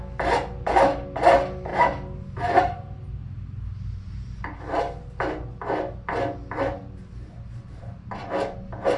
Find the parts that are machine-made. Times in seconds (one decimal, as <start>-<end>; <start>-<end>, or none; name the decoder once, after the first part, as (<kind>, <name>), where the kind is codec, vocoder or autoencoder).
none